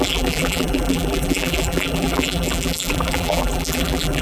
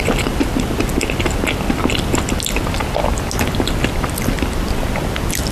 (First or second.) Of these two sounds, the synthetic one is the first